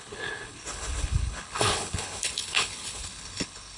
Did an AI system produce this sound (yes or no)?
yes